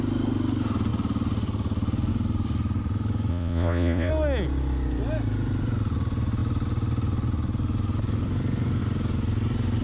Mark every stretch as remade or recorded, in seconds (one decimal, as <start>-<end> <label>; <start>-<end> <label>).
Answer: 0.0-3.3 recorded; 3.3-4.1 remade; 4.1-9.8 recorded